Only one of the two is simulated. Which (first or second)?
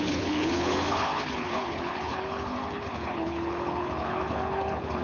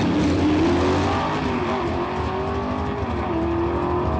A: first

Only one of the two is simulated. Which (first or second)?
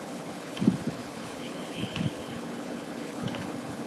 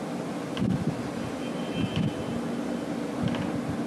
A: first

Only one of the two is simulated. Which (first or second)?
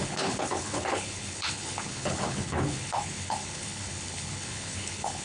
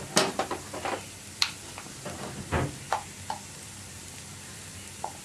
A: first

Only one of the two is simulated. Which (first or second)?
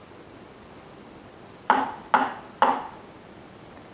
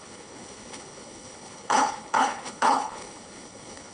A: second